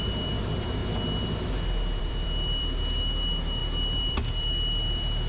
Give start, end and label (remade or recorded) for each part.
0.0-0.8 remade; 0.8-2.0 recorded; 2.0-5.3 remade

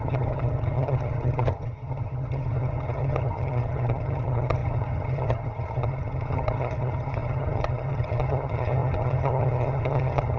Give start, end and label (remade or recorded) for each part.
0.0-10.4 remade

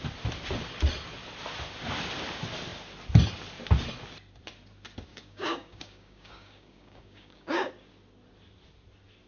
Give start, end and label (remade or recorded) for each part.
0.0-5.1 recorded; 5.1-7.7 remade; 7.7-9.3 recorded

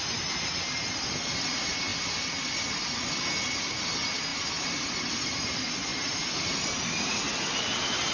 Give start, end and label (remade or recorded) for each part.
0.0-5.9 recorded; 5.9-6.9 remade; 6.9-8.1 recorded

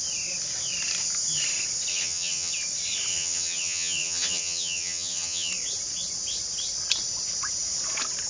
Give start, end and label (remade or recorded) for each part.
0.0-1.9 recorded; 1.9-2.5 remade; 2.5-3.1 recorded; 3.1-5.5 remade; 5.5-8.3 recorded